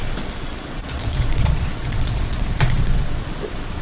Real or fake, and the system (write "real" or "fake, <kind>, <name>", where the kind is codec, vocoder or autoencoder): fake, vocoder, Vocos